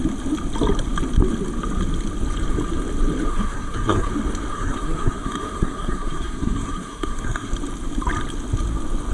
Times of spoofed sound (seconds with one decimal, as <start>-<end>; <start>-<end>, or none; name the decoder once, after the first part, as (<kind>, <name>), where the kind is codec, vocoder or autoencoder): 3.3-4.1 (codec, SNAC); 4.5-7.5